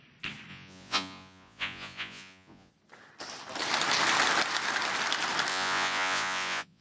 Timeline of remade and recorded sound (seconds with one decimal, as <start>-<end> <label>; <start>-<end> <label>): 0.0-0.5 recorded; 0.5-2.7 remade; 2.7-5.5 recorded; 5.5-6.8 remade